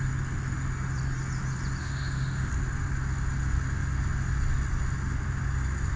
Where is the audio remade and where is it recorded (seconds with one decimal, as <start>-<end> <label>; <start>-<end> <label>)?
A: 0.0-1.8 recorded; 1.8-2.5 remade; 2.5-6.0 recorded